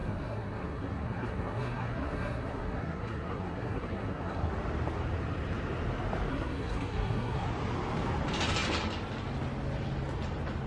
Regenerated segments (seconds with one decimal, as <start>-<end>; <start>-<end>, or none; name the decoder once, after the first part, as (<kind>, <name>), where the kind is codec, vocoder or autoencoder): 0.0-4.5 (codec, SNAC); 6.3-7.5

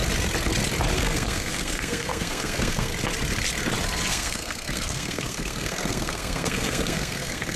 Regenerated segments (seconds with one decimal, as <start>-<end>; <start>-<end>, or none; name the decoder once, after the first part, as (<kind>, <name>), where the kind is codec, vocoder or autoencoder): 0.9-2.9 (codec, SNAC); 4.1-7.6

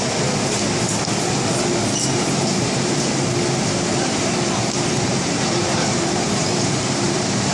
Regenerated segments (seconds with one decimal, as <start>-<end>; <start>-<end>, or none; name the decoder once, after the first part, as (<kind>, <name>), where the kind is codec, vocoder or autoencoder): 2.1-3.2 (vocoder, BigVGAN v2); 3.9-7.5

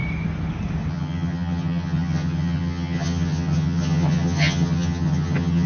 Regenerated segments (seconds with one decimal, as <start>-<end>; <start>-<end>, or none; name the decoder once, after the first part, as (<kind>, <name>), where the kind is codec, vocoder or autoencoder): 0.9-5.7 (vocoder, HiFi-GAN)